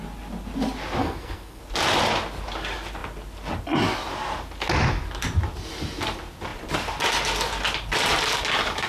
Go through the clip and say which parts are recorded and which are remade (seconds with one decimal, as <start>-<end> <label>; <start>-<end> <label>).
0.0-1.0 recorded; 1.0-1.6 remade; 1.6-8.9 recorded